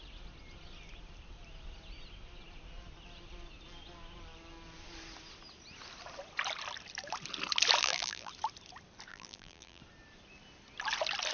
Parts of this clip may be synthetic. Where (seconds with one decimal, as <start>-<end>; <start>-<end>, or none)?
7.8-8.3; 9.1-9.8